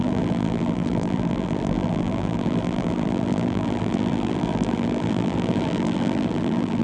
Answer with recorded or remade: remade